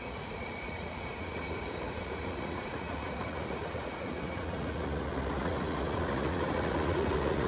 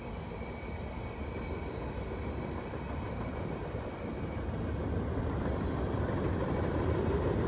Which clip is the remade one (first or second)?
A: first